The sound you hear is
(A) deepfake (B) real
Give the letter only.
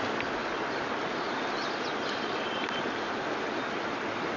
B